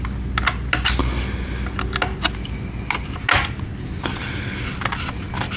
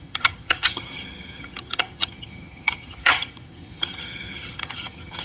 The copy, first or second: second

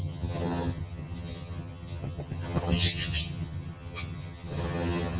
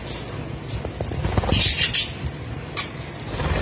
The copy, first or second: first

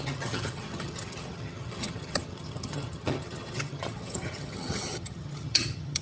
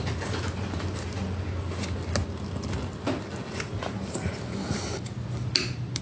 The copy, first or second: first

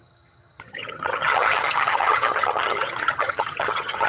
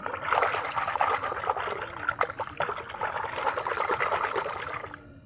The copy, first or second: first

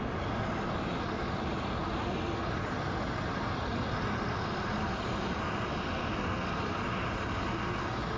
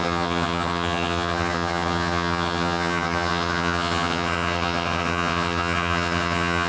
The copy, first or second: second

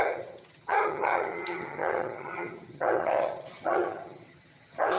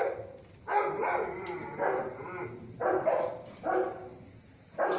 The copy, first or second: first